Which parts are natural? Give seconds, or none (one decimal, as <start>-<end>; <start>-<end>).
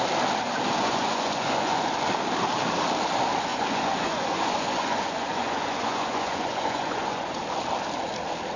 0.0-0.8; 1.9-3.5; 7.4-8.6